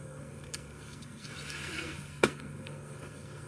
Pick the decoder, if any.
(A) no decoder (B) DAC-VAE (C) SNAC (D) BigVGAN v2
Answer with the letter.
C